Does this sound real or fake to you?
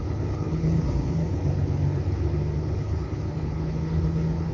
fake